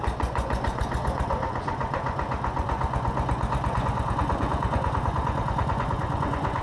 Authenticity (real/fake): fake